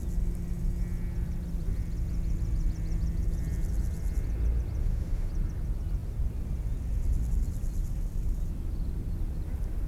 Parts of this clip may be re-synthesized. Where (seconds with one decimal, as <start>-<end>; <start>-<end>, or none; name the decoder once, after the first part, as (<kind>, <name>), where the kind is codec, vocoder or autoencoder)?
4.8-5.3 (autoencoder, DAC-VAE)